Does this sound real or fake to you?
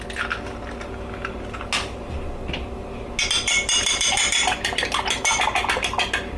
real